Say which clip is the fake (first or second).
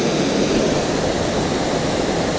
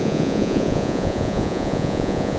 second